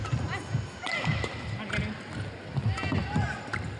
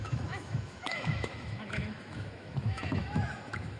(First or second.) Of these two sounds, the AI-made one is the second